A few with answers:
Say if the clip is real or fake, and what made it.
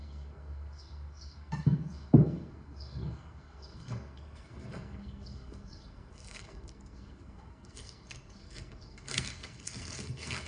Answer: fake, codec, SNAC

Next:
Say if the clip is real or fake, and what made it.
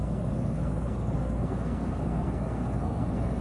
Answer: fake, codec, SNAC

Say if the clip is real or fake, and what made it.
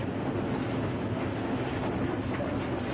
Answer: real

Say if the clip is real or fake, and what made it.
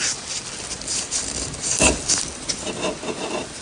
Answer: real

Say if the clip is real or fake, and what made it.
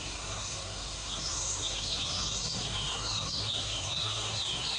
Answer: fake, codec, SNAC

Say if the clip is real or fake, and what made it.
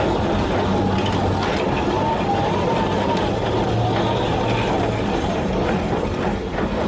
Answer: real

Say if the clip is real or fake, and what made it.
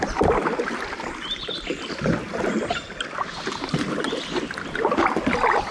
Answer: real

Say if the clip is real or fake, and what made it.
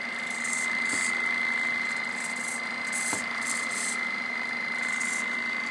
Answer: real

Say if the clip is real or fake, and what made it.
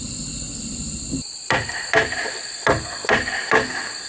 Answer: real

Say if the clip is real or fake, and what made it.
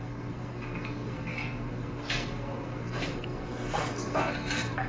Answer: fake, codec, SNAC